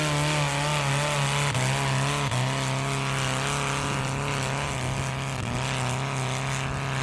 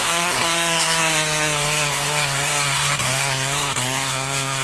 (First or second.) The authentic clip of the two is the first